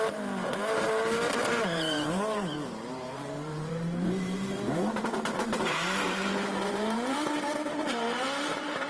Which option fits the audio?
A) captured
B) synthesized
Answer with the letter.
B